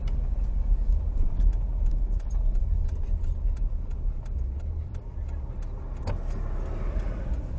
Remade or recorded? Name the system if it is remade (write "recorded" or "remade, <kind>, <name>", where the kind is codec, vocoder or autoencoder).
recorded